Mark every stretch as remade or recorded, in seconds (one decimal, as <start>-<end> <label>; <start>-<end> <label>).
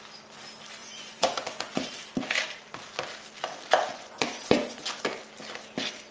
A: 0.0-0.8 recorded; 0.8-1.9 remade; 1.9-3.9 recorded; 3.9-5.0 remade; 5.0-6.1 recorded